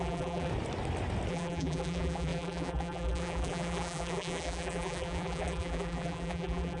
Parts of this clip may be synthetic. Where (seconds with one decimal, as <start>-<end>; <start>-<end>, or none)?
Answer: 0.0-0.5; 1.3-6.8